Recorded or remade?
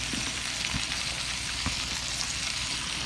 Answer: recorded